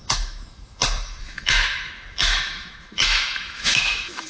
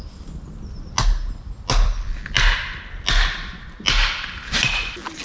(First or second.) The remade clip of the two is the first